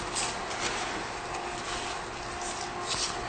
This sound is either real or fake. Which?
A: real